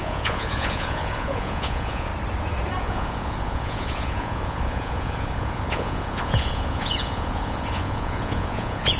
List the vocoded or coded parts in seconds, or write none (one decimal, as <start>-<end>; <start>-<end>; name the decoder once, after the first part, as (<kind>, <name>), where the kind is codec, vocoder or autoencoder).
0.0-2.1 (vocoder, Vocos); 2.8-9.0